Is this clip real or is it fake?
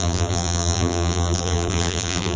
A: fake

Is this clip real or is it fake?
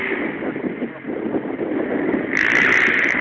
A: real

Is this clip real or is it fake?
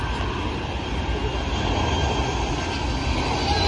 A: real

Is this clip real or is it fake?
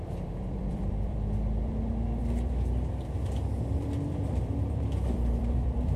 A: fake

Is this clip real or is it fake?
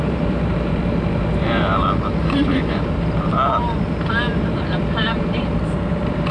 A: fake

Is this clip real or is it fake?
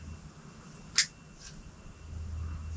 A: real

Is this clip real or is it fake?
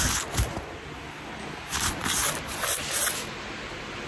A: real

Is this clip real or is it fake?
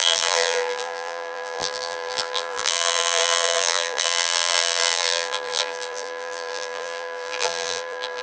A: fake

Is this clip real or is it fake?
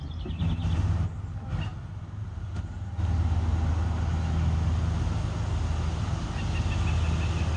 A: real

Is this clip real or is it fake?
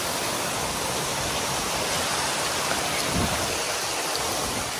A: real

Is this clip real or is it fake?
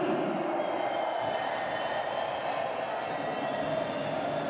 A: real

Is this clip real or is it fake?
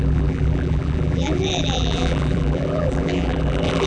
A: fake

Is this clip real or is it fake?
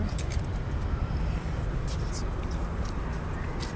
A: fake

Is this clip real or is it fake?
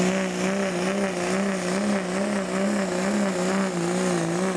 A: real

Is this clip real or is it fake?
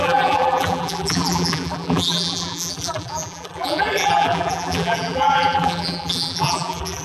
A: fake